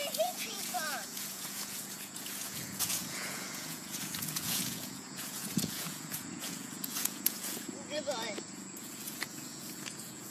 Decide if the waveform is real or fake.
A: fake